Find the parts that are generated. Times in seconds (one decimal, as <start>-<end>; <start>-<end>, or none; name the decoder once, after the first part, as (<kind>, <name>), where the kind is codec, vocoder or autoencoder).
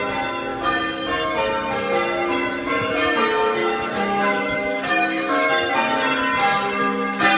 3.6-5.7 (autoencoder, DAC-VAE)